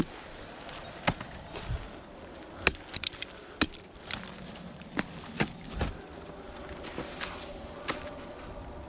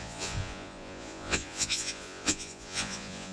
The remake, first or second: second